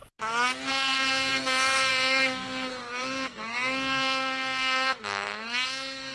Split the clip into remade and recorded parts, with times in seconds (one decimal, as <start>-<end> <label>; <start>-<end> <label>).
0.0-0.7 recorded; 0.7-6.1 remade